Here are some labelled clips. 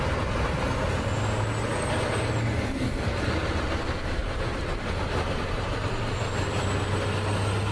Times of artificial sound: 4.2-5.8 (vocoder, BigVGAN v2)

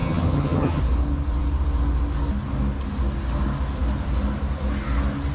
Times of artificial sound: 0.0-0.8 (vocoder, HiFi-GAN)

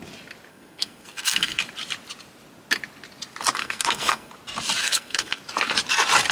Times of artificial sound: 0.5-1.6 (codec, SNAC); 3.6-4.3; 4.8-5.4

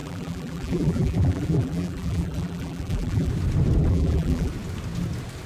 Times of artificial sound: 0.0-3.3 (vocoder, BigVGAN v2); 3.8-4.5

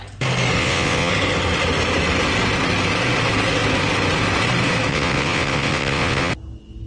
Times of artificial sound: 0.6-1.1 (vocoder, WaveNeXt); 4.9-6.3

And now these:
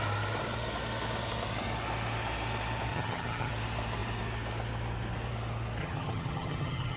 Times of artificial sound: 2.9-3.5 (vocoder, HiFi-GAN); 5.8-7.0

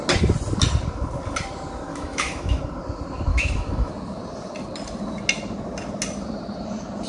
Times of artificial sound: 1.9-2.6 (autoencoder, DAC-VAE); 3.3-3.9